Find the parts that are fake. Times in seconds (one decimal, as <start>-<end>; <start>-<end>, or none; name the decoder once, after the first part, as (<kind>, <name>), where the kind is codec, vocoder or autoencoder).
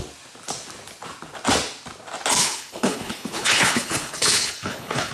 2.4-5.1 (codec, HILCodec)